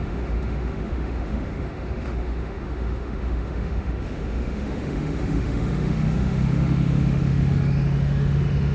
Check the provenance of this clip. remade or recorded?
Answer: remade